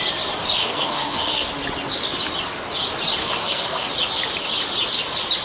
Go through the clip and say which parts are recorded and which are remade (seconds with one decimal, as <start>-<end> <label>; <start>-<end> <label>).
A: 0.0-0.6 recorded; 0.6-1.5 remade; 1.5-3.2 recorded; 3.2-3.9 remade; 3.9-5.4 recorded